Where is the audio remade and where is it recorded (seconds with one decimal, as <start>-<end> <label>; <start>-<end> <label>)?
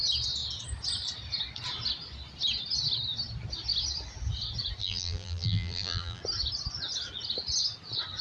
0.0-4.8 recorded; 4.8-6.2 remade; 6.2-8.2 recorded